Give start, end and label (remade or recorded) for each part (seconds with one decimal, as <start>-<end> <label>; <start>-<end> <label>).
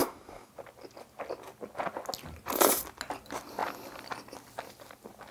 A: 0.0-0.5 remade; 0.5-5.3 recorded